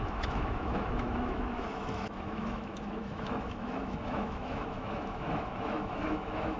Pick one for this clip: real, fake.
fake